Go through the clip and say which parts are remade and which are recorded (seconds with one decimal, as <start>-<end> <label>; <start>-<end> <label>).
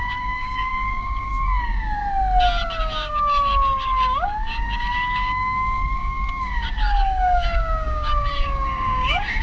0.0-2.0 remade; 2.0-2.8 recorded; 2.8-9.4 remade